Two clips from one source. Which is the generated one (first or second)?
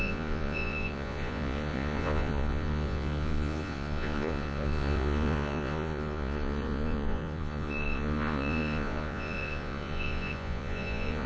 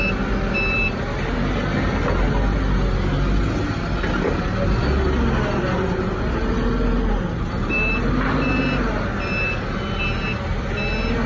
first